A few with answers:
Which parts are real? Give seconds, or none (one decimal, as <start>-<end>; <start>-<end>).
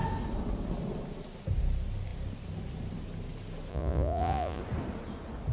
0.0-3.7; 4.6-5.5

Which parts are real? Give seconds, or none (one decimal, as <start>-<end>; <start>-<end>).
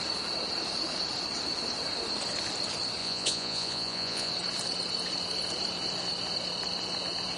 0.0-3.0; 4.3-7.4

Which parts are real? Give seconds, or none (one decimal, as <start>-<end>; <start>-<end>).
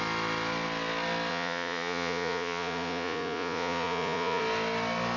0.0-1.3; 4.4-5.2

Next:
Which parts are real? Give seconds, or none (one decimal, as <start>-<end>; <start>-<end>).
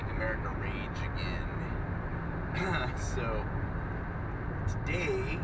0.0-5.4